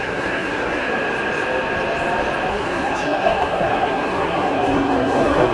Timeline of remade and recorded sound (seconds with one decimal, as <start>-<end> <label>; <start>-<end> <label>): 0.0-0.9 remade; 0.9-2.5 recorded; 2.5-5.5 remade